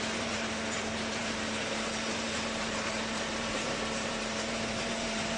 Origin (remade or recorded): remade